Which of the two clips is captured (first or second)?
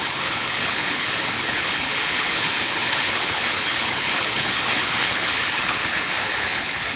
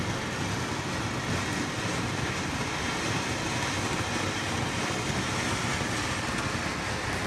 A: second